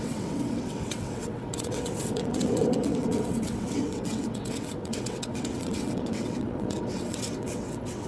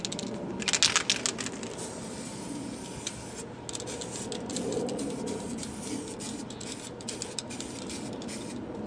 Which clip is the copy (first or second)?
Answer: first